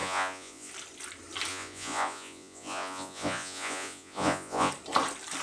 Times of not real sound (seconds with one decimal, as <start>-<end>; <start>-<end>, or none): 0.0-0.7; 1.5-4.7

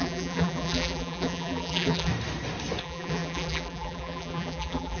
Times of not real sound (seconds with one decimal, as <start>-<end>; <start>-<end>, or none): 0.0-2.1; 2.8-5.0